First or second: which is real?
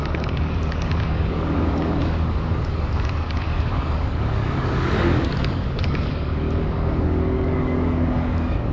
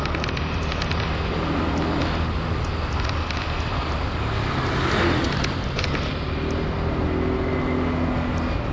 second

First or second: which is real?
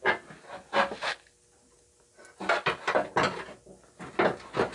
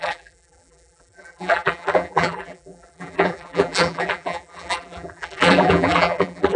first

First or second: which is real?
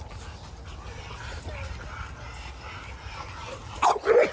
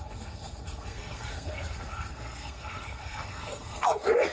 first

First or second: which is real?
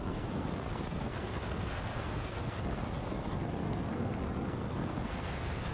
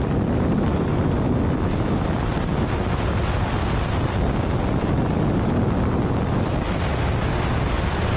second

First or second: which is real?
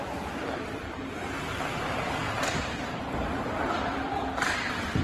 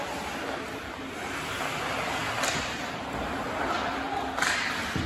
second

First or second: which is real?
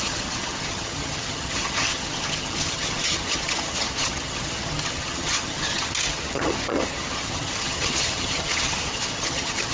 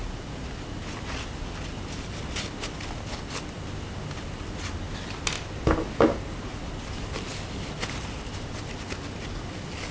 second